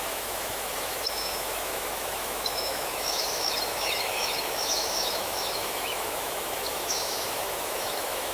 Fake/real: fake